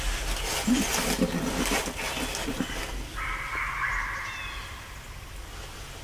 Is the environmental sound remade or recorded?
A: recorded